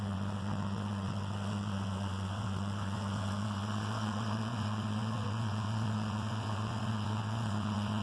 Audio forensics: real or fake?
fake